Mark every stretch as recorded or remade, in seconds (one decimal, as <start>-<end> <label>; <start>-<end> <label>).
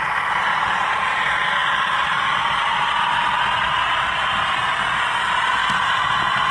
0.0-1.6 recorded; 1.6-2.6 remade; 2.6-5.6 recorded; 5.6-6.5 remade